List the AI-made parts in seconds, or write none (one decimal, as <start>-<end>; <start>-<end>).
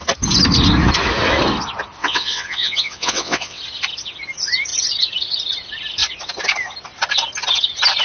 2.0-3.6